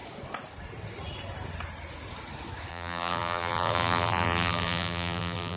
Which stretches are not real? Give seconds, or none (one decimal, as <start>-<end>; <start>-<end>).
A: 2.7-5.6